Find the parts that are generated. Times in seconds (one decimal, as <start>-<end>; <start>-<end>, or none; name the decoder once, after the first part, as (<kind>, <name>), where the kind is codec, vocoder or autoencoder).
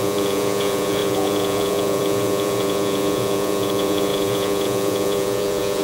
0.0-5.8 (vocoder, Vocos)